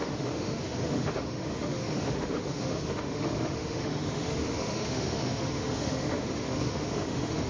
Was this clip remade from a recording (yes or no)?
yes